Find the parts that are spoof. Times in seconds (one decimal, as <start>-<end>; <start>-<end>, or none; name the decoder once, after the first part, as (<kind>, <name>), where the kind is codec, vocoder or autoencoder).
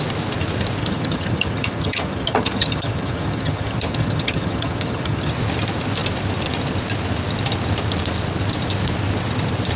0.8-5.3 (vocoder, HiFi-GAN)